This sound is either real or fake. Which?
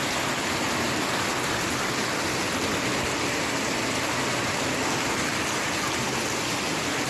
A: real